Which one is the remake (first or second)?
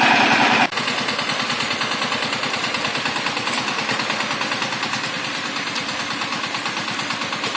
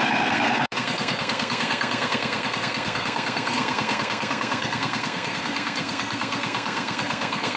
second